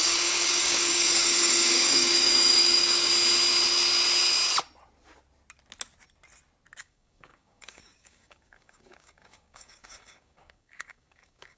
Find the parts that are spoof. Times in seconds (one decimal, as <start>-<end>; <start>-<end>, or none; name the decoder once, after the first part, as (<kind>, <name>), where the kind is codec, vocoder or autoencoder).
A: 0.0-3.1 (codec, DAC); 6.8-11.6